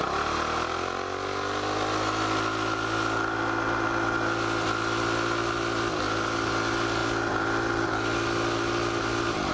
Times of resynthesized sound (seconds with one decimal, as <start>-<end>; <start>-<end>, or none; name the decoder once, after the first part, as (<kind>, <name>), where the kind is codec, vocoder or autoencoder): none

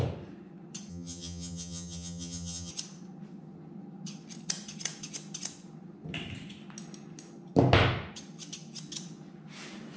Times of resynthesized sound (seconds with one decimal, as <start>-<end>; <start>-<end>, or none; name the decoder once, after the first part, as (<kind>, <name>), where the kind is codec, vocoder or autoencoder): 0.9-2.7 (vocoder, HiFi-GAN)